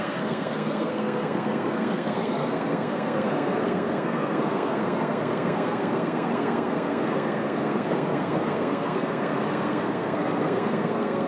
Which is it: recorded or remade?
remade